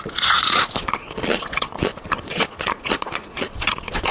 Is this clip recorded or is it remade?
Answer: remade